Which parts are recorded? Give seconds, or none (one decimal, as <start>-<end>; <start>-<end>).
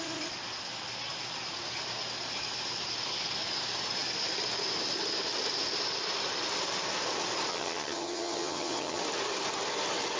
0.0-7.5; 9.0-10.2